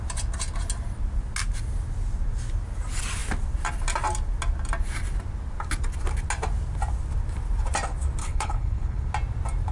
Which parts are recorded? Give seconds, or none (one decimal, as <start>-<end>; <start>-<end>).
0.0-8.2; 9.1-9.7